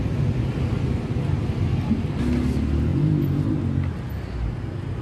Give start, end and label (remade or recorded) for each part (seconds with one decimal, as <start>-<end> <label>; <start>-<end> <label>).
0.0-5.0 recorded